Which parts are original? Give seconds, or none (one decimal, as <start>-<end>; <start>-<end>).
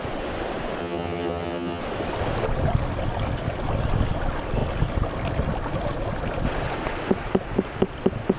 0.0-0.8; 1.8-8.4